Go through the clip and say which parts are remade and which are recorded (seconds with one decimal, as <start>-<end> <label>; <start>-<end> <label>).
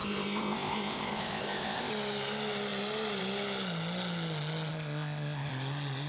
0.0-1.9 remade; 1.9-4.7 recorded; 4.7-5.5 remade; 5.5-6.1 recorded